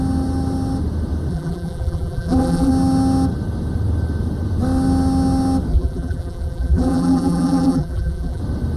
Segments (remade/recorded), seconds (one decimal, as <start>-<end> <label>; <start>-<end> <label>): 0.0-1.3 recorded; 1.3-2.7 remade; 2.7-5.7 recorded; 5.7-8.4 remade; 8.4-8.8 recorded

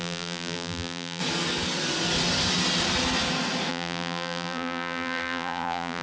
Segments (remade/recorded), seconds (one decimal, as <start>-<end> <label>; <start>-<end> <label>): 0.0-1.2 remade; 1.2-3.7 recorded; 3.7-6.0 remade